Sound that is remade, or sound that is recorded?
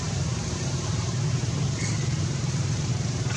remade